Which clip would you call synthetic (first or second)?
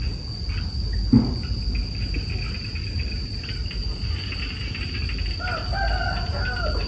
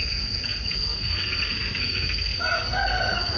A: second